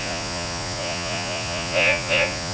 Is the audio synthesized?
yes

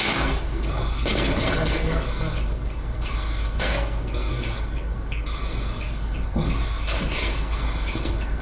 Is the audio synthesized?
yes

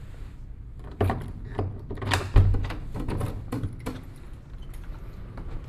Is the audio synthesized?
no